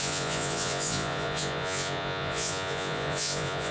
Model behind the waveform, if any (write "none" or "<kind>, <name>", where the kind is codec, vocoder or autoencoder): vocoder, Vocos